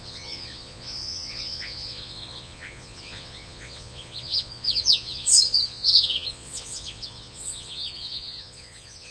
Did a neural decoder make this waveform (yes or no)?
yes